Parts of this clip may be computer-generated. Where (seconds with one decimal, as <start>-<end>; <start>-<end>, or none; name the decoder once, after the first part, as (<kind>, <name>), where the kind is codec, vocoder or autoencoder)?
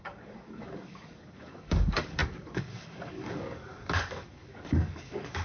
0.0-5.4 (codec, DAC)